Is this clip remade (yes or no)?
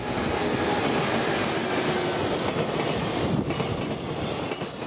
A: no